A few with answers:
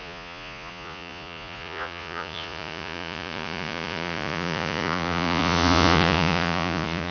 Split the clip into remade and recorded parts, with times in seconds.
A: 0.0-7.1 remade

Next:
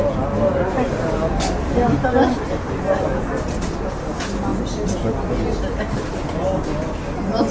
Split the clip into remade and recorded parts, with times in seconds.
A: 0.0-7.5 recorded

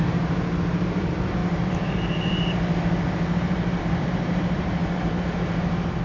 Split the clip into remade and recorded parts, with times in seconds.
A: 0.0-4.8 remade; 4.8-6.0 recorded